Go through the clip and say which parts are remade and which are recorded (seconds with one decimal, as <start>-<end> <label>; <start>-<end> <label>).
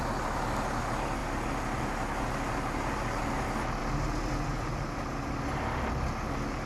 0.0-6.7 recorded